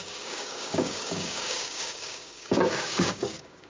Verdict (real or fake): fake